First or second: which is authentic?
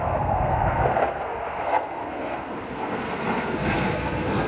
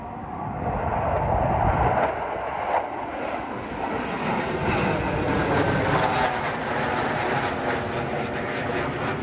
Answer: second